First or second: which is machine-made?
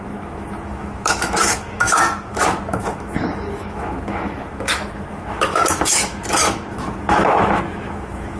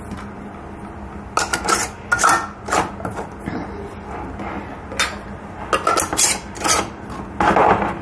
first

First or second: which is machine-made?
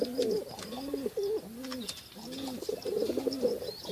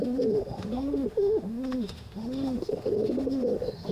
second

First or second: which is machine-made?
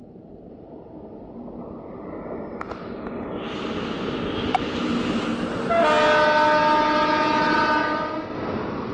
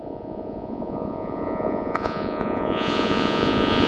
second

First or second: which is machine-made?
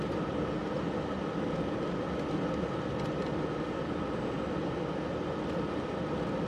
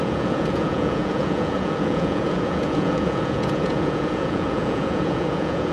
second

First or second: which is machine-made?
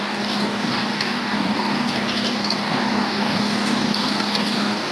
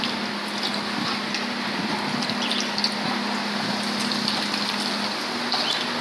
first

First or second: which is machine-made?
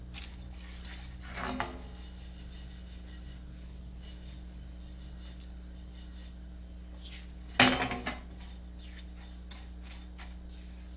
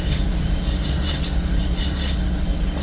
second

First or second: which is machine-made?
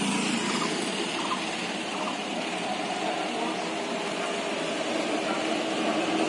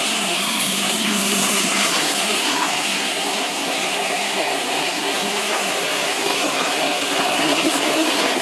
second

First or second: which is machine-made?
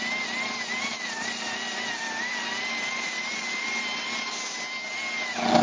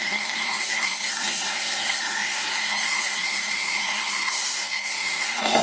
second